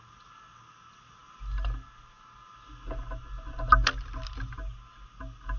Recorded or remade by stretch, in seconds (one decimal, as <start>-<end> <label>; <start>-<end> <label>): 0.0-5.6 recorded